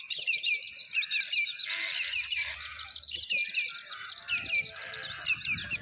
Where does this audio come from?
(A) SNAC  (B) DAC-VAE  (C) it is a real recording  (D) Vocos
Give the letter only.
C